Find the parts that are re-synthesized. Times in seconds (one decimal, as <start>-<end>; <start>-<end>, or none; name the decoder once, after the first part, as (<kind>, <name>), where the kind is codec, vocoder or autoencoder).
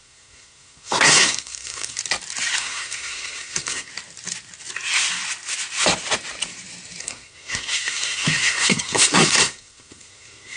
0.0-2.0 (codec, SNAC); 2.6-3.9; 7.0-10.6